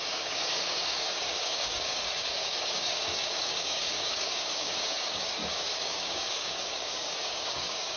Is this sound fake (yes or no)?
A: yes